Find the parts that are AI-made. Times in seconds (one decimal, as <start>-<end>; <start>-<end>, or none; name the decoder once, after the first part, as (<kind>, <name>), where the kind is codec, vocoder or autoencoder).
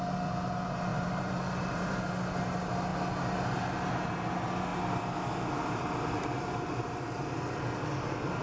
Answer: 0.9-2.0 (vocoder, BigVGAN v2)